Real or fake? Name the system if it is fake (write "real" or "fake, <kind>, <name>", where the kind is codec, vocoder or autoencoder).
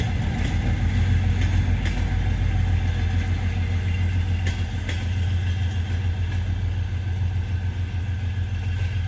real